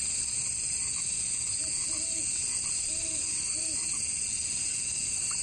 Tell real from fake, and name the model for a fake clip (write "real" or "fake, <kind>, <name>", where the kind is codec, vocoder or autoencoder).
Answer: fake, vocoder, Vocos